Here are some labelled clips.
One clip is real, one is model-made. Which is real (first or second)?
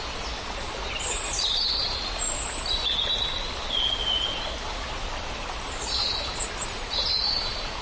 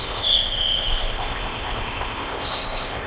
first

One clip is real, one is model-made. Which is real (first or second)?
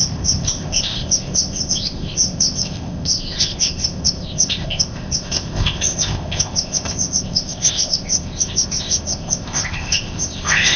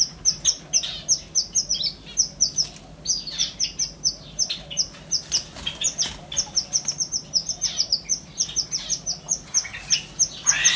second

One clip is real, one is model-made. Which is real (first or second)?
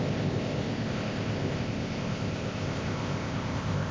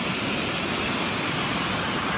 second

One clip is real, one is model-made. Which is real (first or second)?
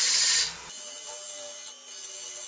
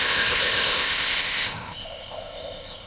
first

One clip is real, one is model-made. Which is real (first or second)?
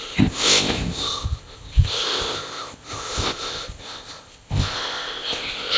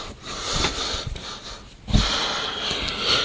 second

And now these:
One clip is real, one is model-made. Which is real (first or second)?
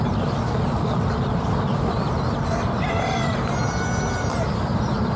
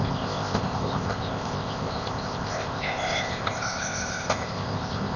first